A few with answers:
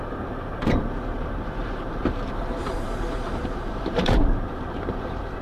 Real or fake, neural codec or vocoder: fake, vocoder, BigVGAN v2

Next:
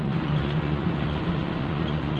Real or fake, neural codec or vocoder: fake, vocoder, Vocos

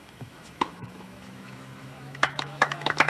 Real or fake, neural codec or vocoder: fake, autoencoder, DAC-VAE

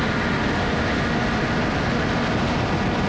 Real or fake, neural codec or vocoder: real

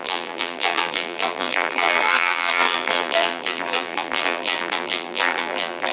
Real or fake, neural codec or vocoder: fake, vocoder, BigVGAN v2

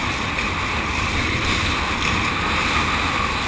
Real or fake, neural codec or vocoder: real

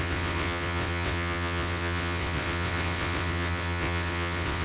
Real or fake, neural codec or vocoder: fake, vocoder, WaveNeXt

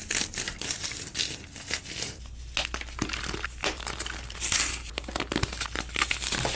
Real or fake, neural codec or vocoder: real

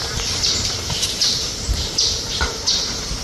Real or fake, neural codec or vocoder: fake, vocoder, BigVGAN v2